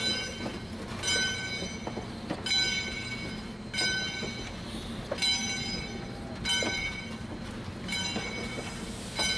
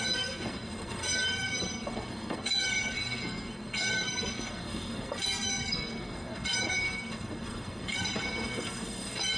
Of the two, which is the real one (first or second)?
first